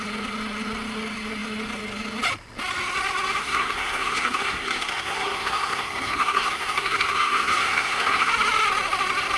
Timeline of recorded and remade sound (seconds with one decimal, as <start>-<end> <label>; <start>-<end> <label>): 0.0-3.4 recorded; 3.4-8.3 remade; 8.3-9.4 recorded

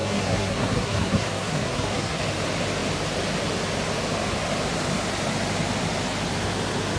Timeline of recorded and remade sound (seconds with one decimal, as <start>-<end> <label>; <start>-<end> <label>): 0.0-2.2 remade; 2.2-7.0 recorded

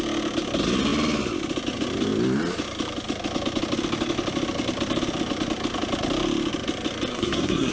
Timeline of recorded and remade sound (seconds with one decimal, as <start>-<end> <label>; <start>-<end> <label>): 0.0-7.1 recorded; 7.1-7.7 remade

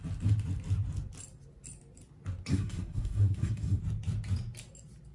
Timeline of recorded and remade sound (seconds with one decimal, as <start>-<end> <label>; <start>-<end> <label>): 0.0-2.5 recorded; 2.5-3.8 remade; 3.8-5.1 recorded

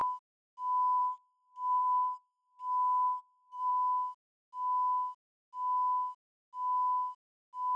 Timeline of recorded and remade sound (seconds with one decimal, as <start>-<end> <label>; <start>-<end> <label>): 0.0-1.0 recorded; 1.0-3.7 remade; 3.7-7.8 recorded

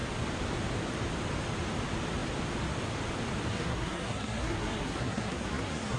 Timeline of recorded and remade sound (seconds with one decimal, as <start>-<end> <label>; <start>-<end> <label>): 0.0-3.5 recorded; 3.5-6.0 remade

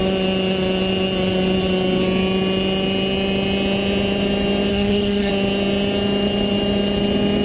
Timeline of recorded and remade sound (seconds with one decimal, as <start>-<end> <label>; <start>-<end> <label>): 0.0-4.7 recorded; 4.7-5.3 remade; 5.3-7.4 recorded

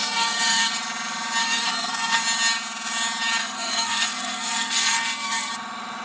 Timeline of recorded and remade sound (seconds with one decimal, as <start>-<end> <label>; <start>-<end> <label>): 0.0-0.7 remade; 0.7-1.4 recorded; 1.4-2.2 remade; 2.2-3.4 recorded; 3.4-5.5 remade; 5.5-6.0 recorded